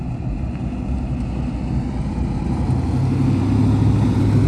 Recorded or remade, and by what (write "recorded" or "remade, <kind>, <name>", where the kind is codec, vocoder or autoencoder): recorded